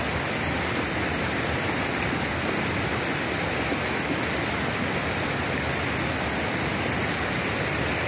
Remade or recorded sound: recorded